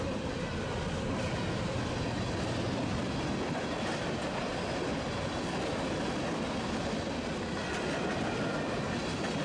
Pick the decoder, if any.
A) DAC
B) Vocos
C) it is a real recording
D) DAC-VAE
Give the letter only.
C